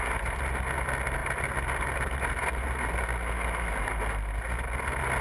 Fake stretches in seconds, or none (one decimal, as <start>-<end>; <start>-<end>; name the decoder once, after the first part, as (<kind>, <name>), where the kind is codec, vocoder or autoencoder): none

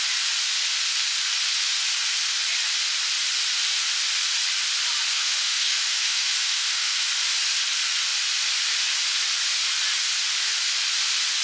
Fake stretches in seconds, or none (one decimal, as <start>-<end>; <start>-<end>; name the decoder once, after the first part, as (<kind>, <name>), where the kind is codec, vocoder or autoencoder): 5.1-7.1 (autoencoder, DAC-VAE)

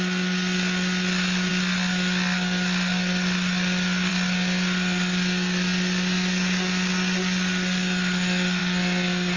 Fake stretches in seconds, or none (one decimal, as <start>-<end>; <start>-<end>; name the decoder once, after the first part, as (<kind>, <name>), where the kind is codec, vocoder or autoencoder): none

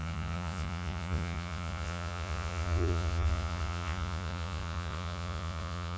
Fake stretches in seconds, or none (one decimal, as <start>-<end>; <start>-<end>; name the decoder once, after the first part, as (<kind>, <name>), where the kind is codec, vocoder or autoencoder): 0.0-6.0 (vocoder, Vocos)

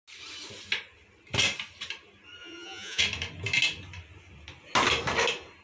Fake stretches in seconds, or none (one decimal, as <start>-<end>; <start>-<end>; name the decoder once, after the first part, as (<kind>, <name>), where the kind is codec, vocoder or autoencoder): 2.4-3.0 (vocoder, Vocos)

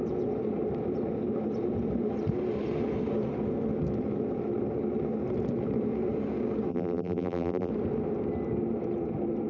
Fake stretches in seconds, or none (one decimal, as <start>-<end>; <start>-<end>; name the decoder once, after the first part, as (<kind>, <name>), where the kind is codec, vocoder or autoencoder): 6.7-7.7 (vocoder, BigVGAN v2)

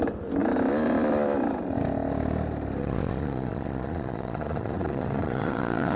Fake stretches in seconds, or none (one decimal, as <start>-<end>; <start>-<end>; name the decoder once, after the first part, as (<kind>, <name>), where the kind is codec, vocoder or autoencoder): 2.8-6.0 (vocoder, Vocos)

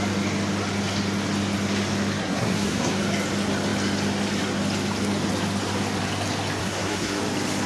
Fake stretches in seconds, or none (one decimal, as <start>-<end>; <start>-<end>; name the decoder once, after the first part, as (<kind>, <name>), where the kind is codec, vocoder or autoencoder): 2.2-2.9 (codec, SNAC); 6.6-7.2